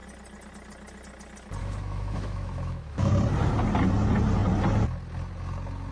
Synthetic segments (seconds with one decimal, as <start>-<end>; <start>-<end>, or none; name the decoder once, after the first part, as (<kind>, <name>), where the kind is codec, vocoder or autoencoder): 1.6-3.1 (autoencoder, DAC-VAE)